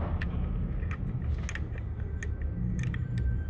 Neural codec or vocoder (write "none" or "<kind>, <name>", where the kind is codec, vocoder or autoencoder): none